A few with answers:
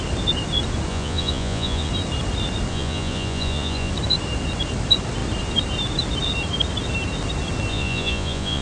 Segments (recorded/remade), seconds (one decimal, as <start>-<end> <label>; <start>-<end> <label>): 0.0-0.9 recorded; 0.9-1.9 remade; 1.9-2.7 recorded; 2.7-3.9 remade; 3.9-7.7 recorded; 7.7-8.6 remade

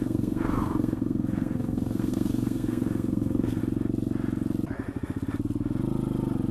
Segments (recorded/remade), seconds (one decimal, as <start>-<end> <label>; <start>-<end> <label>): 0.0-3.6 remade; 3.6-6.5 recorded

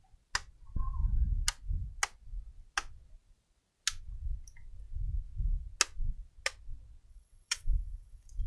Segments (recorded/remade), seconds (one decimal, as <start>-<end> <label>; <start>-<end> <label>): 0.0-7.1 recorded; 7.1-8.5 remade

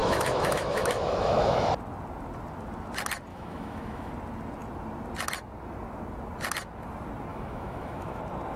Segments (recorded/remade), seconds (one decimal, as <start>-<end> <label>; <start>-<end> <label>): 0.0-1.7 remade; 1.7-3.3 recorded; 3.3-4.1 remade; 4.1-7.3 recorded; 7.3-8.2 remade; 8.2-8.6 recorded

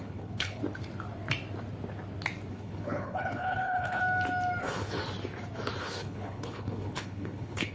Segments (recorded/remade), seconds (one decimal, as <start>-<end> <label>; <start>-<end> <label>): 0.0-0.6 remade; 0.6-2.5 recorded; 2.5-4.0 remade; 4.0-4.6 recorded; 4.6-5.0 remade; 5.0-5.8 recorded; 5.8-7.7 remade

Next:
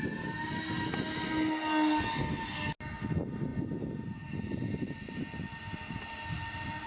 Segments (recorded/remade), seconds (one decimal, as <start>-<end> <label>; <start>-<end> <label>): 0.0-3.5 recorded; 3.5-5.1 remade; 5.1-6.9 recorded

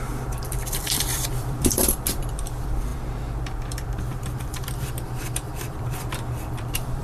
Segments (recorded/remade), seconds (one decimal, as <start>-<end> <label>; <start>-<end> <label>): 0.0-7.0 remade

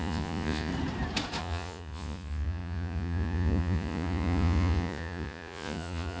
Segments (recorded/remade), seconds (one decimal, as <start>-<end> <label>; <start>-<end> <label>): 0.0-0.7 remade; 0.7-1.4 recorded; 1.4-6.2 remade